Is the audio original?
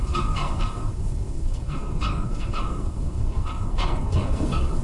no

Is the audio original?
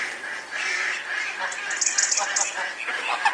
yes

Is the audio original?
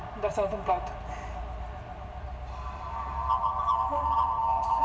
yes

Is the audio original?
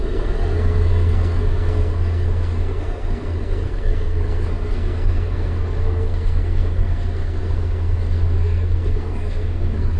no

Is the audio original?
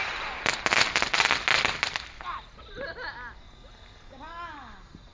yes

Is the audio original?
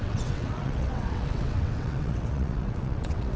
no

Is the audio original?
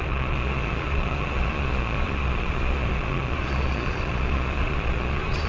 no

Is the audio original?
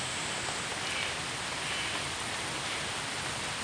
yes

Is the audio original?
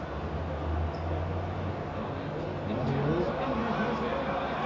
yes